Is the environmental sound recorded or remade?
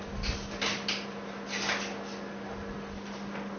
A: recorded